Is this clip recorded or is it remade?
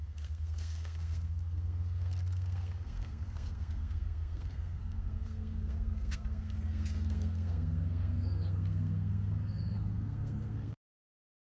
remade